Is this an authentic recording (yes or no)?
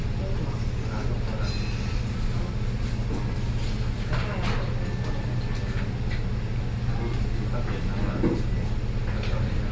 yes